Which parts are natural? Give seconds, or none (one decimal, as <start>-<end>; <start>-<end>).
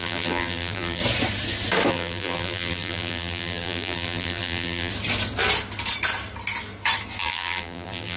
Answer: 1.0-1.9; 4.9-7.2